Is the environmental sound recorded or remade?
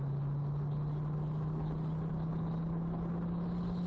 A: recorded